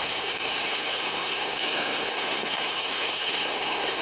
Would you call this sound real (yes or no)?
no